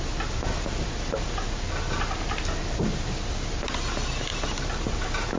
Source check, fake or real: real